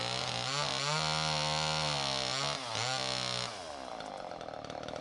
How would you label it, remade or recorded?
recorded